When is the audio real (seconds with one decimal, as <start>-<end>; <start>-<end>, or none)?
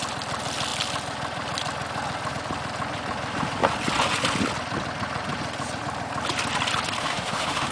0.0-7.0